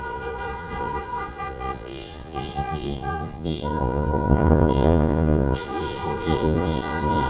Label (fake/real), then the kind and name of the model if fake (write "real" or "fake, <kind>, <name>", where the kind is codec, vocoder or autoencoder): fake, vocoder, Vocos